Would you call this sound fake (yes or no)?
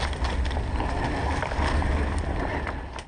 no